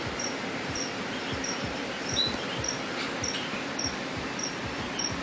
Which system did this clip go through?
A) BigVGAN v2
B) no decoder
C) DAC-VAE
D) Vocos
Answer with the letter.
B